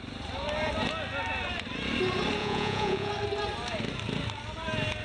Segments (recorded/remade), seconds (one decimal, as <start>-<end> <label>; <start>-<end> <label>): 0.0-2.4 recorded; 2.4-3.1 remade; 3.1-5.0 recorded